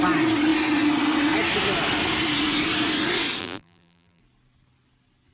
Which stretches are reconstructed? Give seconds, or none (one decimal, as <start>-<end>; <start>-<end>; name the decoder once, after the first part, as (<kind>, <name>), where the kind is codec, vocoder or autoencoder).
3.4-4.2 (vocoder, BigVGAN v2)